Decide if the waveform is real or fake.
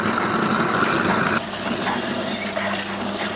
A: real